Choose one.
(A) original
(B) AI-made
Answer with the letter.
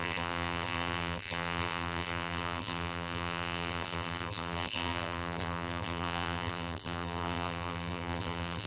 B